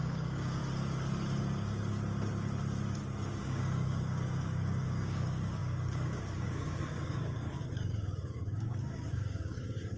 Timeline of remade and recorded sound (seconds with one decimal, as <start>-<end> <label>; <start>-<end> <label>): 0.0-0.6 remade; 0.6-3.4 recorded; 3.4-10.0 remade